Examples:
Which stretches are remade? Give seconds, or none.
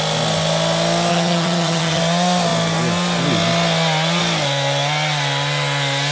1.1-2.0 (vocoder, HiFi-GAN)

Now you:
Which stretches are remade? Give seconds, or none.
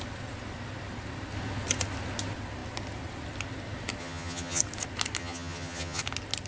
4.0-4.6 (vocoder, HiFi-GAN); 5.2-6.0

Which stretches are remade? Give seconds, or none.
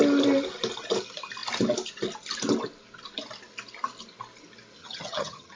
4.8-5.6 (vocoder, HiFi-GAN)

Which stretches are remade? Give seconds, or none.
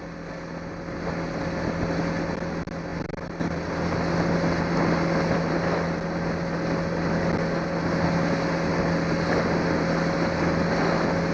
none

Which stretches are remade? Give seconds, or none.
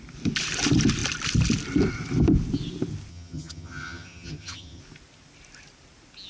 3.1-4.8 (vocoder, HiFi-GAN)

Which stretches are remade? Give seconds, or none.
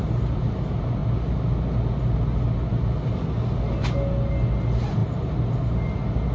none